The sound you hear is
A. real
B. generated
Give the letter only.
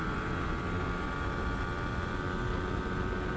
A